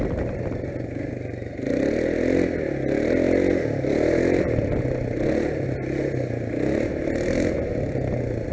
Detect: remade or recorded recorded